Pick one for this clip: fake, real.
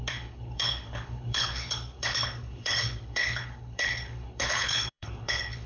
fake